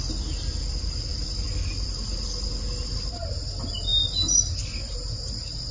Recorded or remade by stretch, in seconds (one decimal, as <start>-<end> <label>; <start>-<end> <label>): 0.0-5.7 recorded